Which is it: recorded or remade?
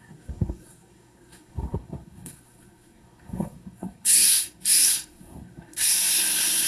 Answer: remade